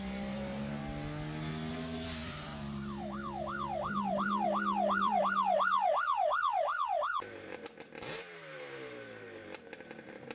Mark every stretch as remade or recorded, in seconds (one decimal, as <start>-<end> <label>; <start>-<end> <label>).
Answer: 0.0-0.8 remade; 0.8-1.7 recorded; 1.7-10.3 remade